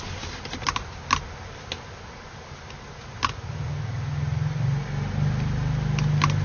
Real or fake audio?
real